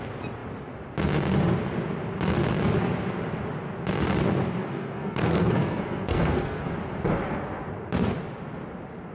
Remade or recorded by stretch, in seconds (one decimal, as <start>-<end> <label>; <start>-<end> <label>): 0.0-4.6 recorded; 4.6-6.7 remade; 6.7-9.1 recorded